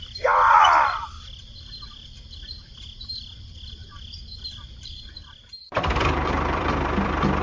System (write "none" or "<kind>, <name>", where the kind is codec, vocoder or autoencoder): vocoder, BigVGAN v2